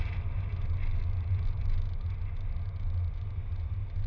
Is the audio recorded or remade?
recorded